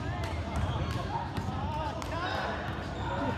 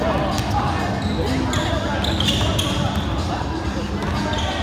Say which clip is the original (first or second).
second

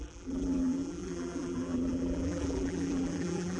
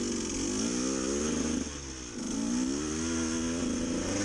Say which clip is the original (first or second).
second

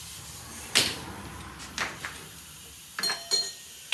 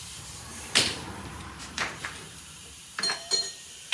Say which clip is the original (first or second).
first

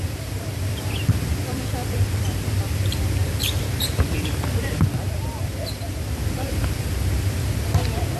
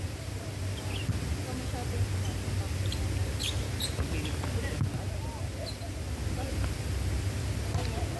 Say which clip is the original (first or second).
second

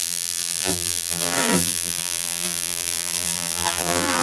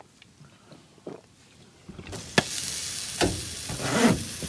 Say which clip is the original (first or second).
second